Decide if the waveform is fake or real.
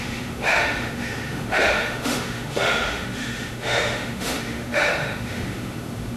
fake